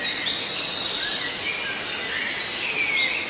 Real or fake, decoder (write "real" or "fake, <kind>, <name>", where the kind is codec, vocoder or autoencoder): real